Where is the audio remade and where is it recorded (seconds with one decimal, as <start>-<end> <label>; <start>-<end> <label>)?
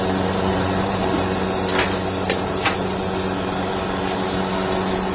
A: 0.0-0.5 recorded; 0.5-1.0 remade; 1.0-5.1 recorded